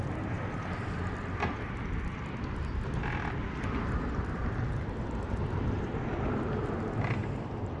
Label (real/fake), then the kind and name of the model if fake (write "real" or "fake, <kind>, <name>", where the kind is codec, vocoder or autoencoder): real